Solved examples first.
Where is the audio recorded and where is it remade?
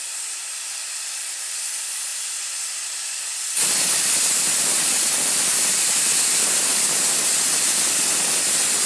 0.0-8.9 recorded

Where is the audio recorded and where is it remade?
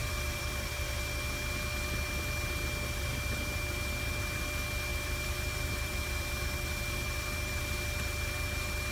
0.0-0.7 remade; 0.7-4.9 recorded; 4.9-7.6 remade; 7.6-8.9 recorded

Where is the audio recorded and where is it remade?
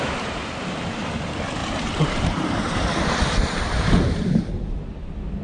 0.0-1.6 recorded; 1.6-4.5 remade; 4.5-5.4 recorded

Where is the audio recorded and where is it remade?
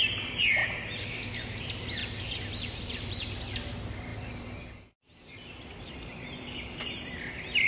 0.0-7.7 remade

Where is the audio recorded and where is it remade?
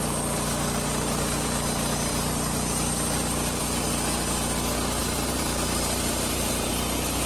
0.0-2.1 recorded; 2.1-3.6 remade; 3.6-5.0 recorded; 5.0-6.7 remade; 6.7-7.3 recorded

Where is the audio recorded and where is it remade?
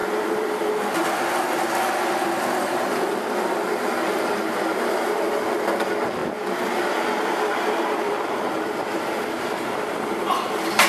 0.0-0.7 remade; 0.7-6.2 recorded; 6.2-10.5 remade; 10.5-10.9 recorded